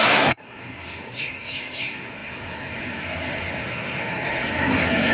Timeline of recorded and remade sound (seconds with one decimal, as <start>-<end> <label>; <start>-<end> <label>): 0.0-5.1 remade